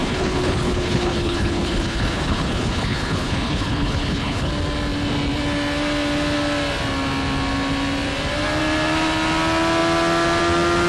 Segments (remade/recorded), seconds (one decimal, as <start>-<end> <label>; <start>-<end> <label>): 0.0-4.5 remade; 4.5-10.9 recorded